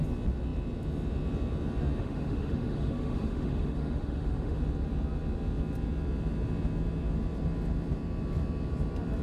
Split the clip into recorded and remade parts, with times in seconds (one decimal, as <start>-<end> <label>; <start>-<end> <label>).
0.0-2.0 recorded; 2.0-4.6 remade; 4.6-9.2 recorded